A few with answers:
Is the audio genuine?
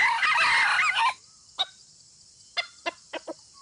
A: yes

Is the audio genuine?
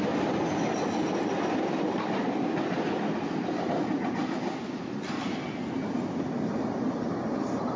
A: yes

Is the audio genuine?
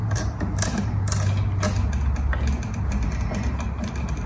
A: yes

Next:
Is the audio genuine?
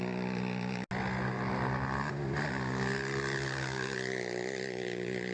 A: yes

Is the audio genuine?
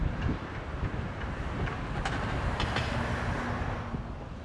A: yes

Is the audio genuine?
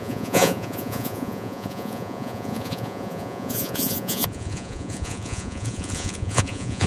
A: no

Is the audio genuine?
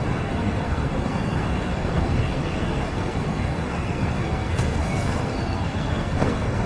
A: no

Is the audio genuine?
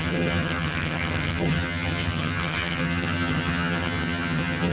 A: no